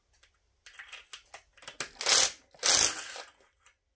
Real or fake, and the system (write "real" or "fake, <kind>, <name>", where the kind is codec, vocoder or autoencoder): real